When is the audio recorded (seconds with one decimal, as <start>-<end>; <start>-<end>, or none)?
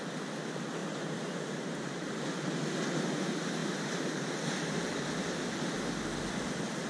0.0-0.8; 2.1-3.6; 4.3-6.9